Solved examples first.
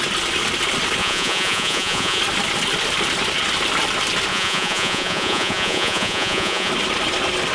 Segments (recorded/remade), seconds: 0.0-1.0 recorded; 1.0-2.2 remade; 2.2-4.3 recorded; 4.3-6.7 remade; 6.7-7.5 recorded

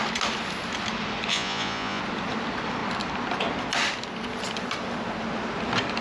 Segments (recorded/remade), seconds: 0.0-1.3 recorded; 1.3-2.0 remade; 2.0-6.0 recorded

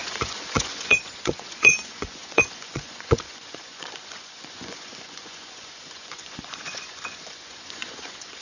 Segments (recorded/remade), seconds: 0.0-8.4 remade

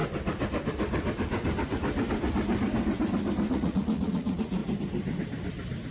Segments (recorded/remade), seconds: 0.0-3.5 recorded; 3.5-4.6 remade; 4.6-5.9 recorded

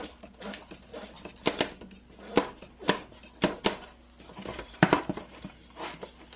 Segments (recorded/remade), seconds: 0.0-6.4 recorded